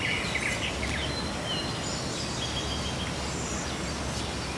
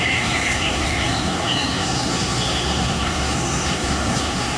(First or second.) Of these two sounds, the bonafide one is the first